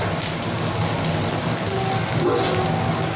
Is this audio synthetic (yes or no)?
no